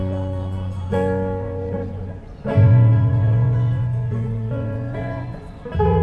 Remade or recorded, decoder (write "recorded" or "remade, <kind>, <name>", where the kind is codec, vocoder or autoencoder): remade, vocoder, Vocos